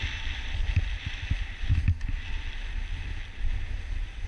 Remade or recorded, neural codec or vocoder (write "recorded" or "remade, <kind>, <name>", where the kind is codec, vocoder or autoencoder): recorded